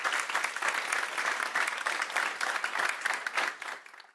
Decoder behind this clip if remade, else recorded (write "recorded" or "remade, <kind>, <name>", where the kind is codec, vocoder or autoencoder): recorded